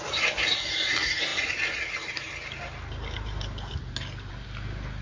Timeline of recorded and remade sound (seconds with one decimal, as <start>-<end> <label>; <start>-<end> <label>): 0.0-5.0 recorded